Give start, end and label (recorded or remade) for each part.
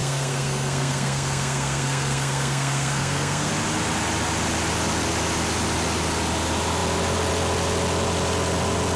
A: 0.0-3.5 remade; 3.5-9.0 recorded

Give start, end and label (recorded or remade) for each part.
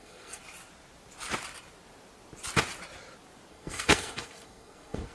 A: 0.0-0.4 remade; 0.4-3.5 recorded; 3.5-5.1 remade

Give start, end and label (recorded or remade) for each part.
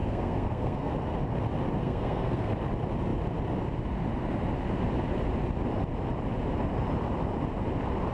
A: 0.0-0.9 remade; 0.9-1.8 recorded; 1.8-2.5 remade; 2.5-8.1 recorded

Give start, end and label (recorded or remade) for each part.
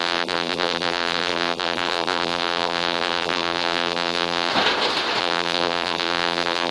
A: 0.0-4.5 remade; 4.5-5.2 recorded; 5.2-6.7 remade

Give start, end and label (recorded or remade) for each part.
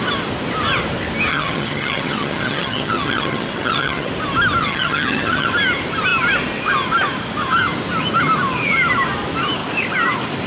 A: 0.0-1.3 recorded; 1.3-4.1 remade; 4.1-4.6 recorded; 4.6-5.5 remade; 5.5-10.5 recorded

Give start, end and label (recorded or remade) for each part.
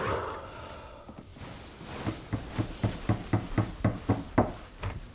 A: 0.0-5.1 recorded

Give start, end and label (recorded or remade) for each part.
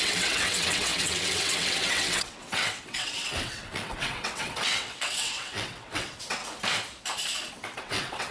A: 0.0-6.4 remade; 6.4-7.5 recorded; 7.5-8.3 remade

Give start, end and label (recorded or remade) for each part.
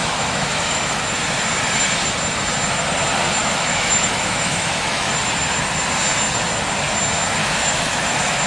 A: 0.0-1.0 remade; 1.0-3.4 recorded; 3.4-5.1 remade; 5.1-7.4 recorded; 7.4-8.5 remade